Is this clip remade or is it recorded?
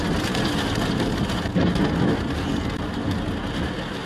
recorded